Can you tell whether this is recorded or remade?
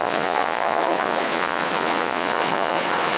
remade